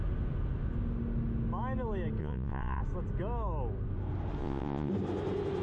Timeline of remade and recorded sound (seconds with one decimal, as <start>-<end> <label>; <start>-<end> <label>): 0.0-2.2 recorded; 2.2-2.8 remade; 2.8-4.4 recorded; 4.4-4.9 remade; 4.9-5.6 recorded